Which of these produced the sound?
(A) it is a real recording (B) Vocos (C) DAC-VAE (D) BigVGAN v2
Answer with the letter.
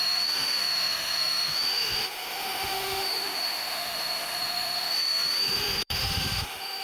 C